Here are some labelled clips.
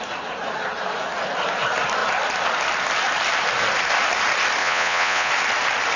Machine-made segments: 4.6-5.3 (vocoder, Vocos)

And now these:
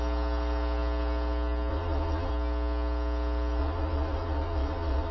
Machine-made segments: 1.7-2.3 (vocoder, Vocos); 3.6-5.1

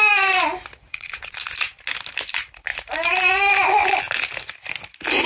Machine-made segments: 0.9-1.4 (vocoder, Vocos)

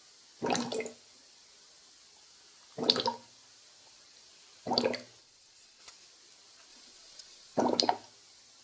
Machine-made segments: 5.2-5.8 (vocoder, Vocos); 6.7-7.6

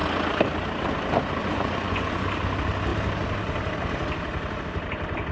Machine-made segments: 1.4-2.1 (vocoder, Vocos)

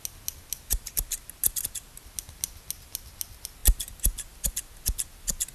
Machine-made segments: none

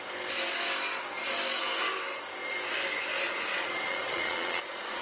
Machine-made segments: 3.5-5.0 (vocoder, Vocos)